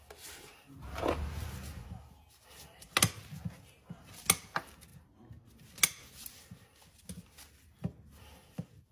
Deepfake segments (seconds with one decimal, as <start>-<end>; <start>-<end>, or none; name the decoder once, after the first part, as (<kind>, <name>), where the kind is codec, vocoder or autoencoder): none